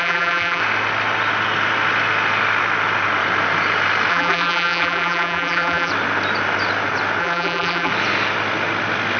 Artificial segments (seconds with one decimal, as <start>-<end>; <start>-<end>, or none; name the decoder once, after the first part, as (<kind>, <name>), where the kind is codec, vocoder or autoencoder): 0.0-0.6 (vocoder, BigVGAN v2); 4.1-5.9; 7.2-7.9